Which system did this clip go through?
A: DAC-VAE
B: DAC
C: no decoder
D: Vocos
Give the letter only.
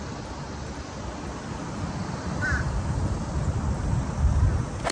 C